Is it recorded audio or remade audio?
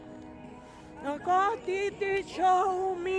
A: recorded